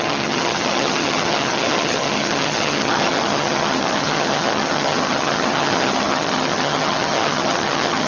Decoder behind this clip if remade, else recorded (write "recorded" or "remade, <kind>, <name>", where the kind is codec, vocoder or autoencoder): remade, vocoder, HiFi-GAN